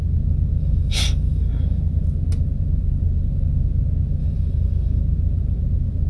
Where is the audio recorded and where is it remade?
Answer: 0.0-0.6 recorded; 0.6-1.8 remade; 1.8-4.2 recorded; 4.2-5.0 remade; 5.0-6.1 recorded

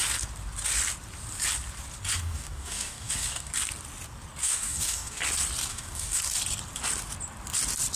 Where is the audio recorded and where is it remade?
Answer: 0.0-2.1 recorded; 2.1-3.5 remade; 3.5-4.4 recorded; 4.4-5.2 remade; 5.2-5.7 recorded; 5.7-6.2 remade; 6.2-8.0 recorded

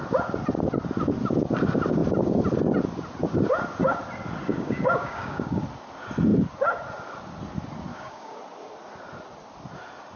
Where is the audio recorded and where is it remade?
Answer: 0.0-4.5 recorded; 4.5-5.6 remade; 5.6-7.9 recorded; 7.9-8.4 remade; 8.4-10.2 recorded

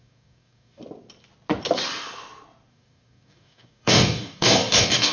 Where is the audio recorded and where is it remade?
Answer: 0.0-0.8 remade; 0.8-2.7 recorded; 2.7-5.1 remade

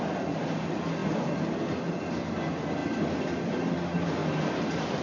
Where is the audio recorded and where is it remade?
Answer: 0.0-5.0 recorded

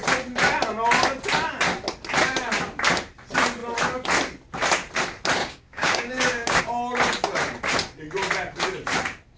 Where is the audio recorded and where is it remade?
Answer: 0.0-5.4 recorded; 5.4-6.6 remade; 6.6-9.4 recorded

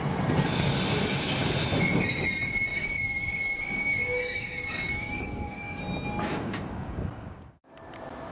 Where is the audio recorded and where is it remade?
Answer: 0.0-2.7 recorded; 2.7-5.8 remade; 5.8-6.3 recorded; 6.3-7.7 remade; 7.7-8.3 recorded

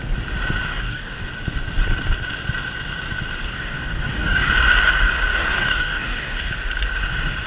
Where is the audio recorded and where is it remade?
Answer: 0.0-0.7 recorded; 0.7-1.3 remade; 1.3-3.4 recorded; 3.4-4.5 remade; 4.5-5.3 recorded; 5.3-6.5 remade; 6.5-7.5 recorded